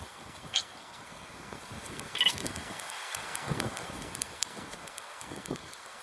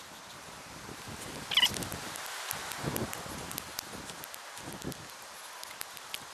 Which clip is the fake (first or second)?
first